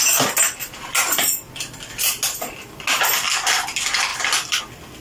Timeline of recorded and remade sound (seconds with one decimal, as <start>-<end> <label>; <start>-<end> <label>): 0.0-5.0 recorded